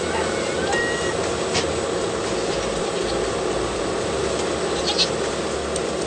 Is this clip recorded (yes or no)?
yes